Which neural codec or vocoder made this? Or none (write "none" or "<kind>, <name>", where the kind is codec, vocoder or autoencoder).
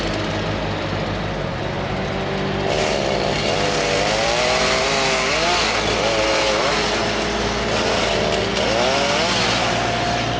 none